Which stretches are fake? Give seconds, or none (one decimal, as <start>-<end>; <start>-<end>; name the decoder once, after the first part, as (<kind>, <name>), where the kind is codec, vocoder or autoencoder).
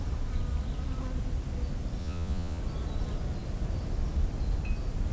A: 2.0-2.6 (vocoder, Vocos)